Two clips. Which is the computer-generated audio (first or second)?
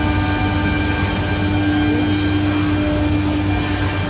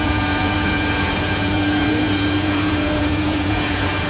second